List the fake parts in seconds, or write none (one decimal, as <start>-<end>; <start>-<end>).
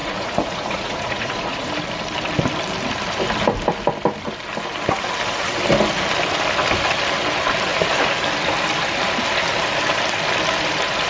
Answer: 0.0-1.7